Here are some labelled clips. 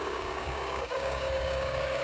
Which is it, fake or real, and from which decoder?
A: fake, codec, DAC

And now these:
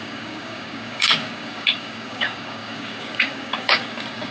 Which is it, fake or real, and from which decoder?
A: fake, codec, DAC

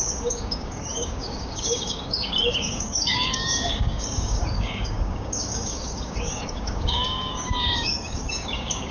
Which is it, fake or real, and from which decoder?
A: fake, codec, DAC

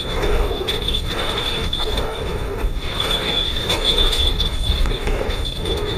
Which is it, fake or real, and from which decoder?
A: fake, codec, DAC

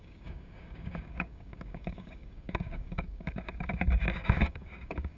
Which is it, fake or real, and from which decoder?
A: fake, codec, DAC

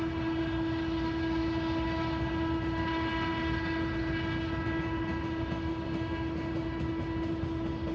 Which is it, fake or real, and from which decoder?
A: real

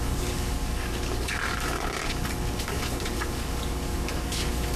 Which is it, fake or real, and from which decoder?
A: fake, codec, DAC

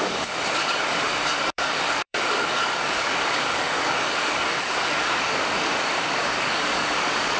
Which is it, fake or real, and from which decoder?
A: fake, codec, DAC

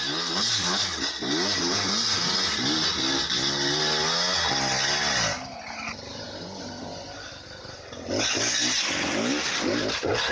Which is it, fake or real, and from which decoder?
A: real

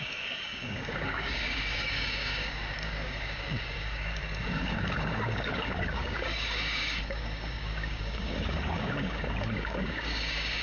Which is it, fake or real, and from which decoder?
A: fake, codec, DAC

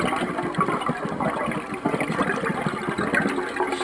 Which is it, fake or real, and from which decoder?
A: real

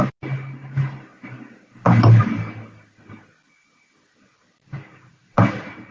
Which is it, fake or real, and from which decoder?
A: real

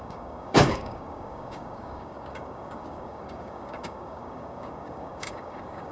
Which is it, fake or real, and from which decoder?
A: fake, codec, DAC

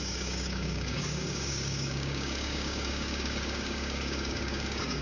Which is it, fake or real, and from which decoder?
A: fake, codec, DAC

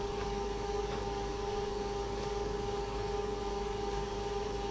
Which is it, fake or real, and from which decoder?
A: fake, codec, DAC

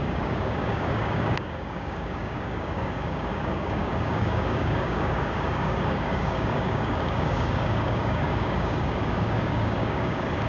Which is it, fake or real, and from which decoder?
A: fake, codec, DAC